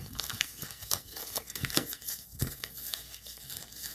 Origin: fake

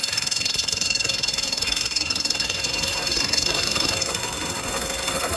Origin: fake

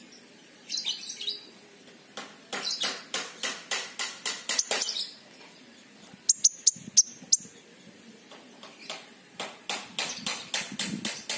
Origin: real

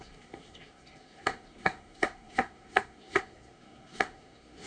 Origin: fake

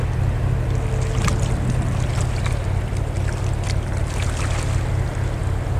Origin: real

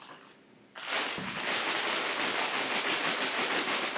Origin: real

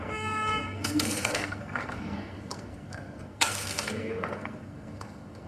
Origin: fake